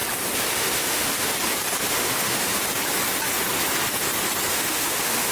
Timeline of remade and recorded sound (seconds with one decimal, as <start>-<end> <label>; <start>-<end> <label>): 0.0-0.5 recorded; 0.5-1.3 remade; 1.3-1.9 recorded; 1.9-2.5 remade; 2.5-4.5 recorded; 4.5-5.3 remade